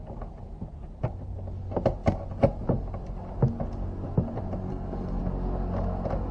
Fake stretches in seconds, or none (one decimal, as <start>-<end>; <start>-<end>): 4.7-5.2